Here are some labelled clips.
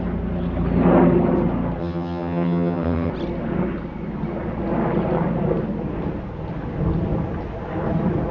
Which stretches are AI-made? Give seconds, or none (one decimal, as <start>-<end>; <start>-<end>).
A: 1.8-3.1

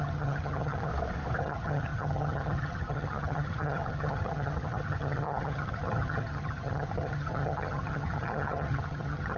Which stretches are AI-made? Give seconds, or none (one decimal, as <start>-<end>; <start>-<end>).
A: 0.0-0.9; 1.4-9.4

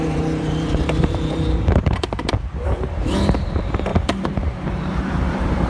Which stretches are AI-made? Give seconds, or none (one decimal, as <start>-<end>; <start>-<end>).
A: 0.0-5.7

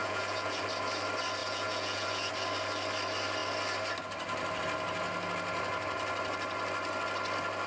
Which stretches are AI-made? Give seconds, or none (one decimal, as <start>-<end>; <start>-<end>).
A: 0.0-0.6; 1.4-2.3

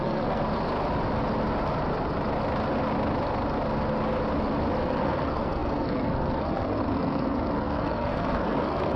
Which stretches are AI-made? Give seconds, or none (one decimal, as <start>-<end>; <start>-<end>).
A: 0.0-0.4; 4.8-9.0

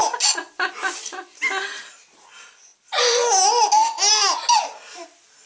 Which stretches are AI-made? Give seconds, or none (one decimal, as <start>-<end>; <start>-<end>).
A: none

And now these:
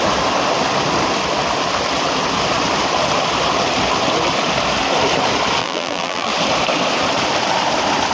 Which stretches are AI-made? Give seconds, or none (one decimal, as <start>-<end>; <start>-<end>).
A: 5.6-6.3

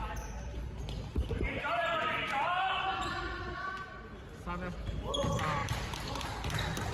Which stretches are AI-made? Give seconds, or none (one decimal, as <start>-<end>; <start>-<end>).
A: 0.0-3.2; 5.6-6.1